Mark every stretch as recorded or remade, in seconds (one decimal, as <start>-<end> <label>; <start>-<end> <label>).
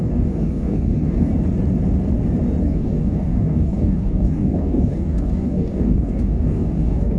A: 0.0-1.3 remade; 1.3-2.6 recorded; 2.6-7.2 remade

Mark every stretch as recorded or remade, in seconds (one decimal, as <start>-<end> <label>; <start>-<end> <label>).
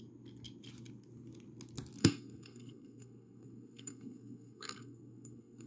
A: 0.0-2.0 recorded; 2.0-5.7 remade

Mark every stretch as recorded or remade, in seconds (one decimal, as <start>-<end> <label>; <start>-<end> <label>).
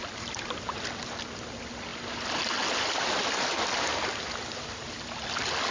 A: 0.0-5.7 recorded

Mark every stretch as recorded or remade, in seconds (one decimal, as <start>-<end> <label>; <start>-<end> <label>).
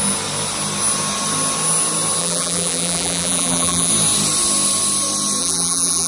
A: 0.0-2.2 recorded; 2.2-3.9 remade; 3.9-5.4 recorded; 5.4-6.1 remade